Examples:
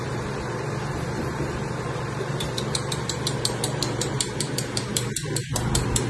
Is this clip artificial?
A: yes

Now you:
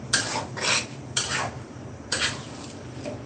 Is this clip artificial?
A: yes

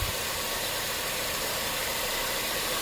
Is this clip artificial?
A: yes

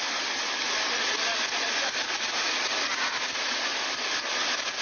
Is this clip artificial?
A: no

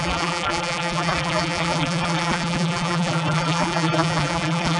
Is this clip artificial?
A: yes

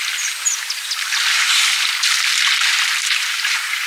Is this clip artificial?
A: no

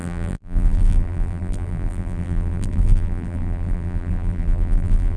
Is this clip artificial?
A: yes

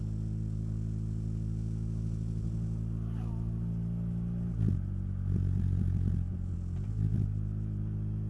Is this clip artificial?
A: no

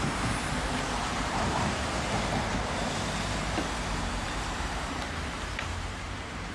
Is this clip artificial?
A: yes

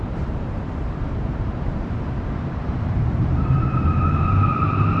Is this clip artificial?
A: yes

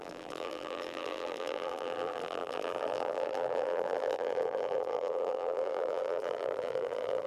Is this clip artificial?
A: yes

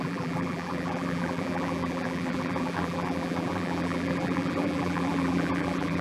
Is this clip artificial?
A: yes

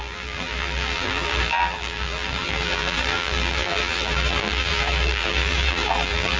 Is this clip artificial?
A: yes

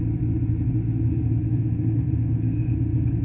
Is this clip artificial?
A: no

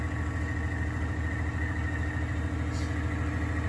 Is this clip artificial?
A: no